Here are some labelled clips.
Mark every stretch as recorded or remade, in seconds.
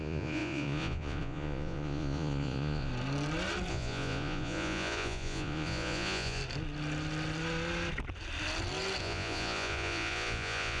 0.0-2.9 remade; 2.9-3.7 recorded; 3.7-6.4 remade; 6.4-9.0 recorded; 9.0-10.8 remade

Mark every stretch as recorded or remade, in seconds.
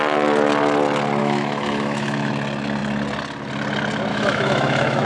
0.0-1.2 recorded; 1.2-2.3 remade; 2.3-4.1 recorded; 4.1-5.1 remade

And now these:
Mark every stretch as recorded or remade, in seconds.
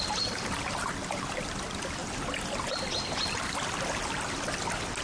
0.0-5.0 recorded